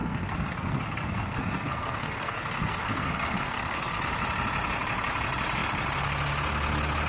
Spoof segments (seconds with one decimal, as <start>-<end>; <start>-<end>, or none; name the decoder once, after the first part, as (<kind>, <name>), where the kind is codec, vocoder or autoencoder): 0.0-4.0 (codec, SNAC)